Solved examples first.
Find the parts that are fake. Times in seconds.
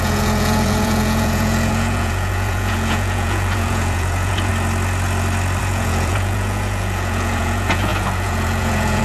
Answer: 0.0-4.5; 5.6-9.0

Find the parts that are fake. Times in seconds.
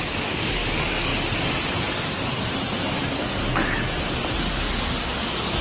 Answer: 0.0-1.1; 4.5-5.6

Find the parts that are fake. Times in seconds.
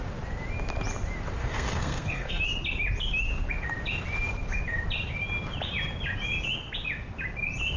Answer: 1.4-2.4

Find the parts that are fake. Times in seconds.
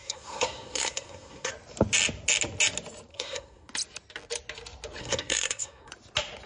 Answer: 0.0-1.5; 3.1-3.7; 5.0-5.9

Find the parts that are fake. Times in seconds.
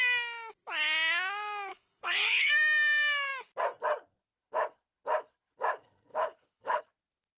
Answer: 1.7-2.5; 6.1-6.8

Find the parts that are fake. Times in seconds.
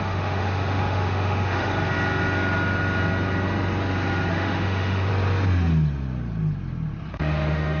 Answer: 0.0-1.7; 4.3-5.1; 7.1-7.8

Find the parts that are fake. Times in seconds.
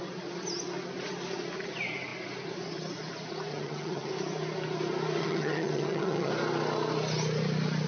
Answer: 3.5-4.1; 5.2-6.3